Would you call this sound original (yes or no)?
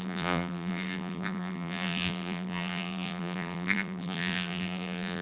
no